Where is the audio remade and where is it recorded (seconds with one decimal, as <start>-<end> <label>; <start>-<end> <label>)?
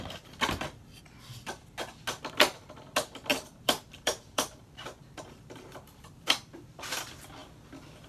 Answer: 0.0-3.3 recorded; 3.3-7.0 remade; 7.0-8.1 recorded